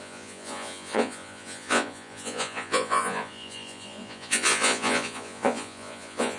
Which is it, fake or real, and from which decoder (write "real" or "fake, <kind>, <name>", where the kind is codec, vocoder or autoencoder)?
fake, vocoder, Vocos